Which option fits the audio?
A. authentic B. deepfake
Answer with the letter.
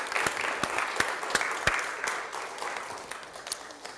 A